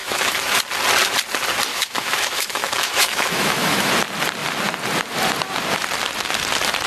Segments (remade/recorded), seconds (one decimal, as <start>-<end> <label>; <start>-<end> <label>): 0.0-0.6 remade; 0.6-1.7 recorded; 1.7-3.9 remade; 3.9-6.9 recorded